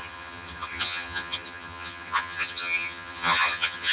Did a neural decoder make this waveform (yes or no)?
yes